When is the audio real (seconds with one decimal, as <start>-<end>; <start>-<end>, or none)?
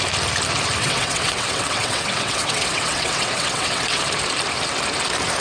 0.0-0.8; 4.0-5.4